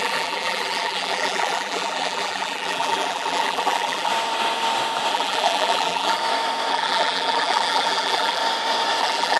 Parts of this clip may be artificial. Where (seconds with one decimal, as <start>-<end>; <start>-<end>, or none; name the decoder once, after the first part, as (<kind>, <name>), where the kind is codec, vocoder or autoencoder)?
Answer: 0.0-4.1 (vocoder, BigVGAN v2); 5.1-6.2; 6.7-8.4; 9.0-9.4